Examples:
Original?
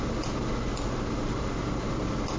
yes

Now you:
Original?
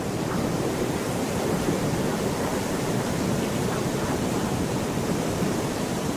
no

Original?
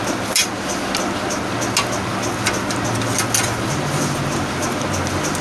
yes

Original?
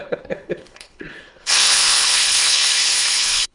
no